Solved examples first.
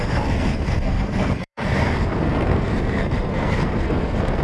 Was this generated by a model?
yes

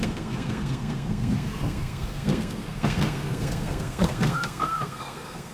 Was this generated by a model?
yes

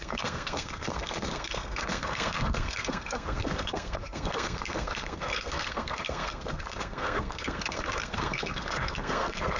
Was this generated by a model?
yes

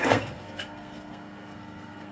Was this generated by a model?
yes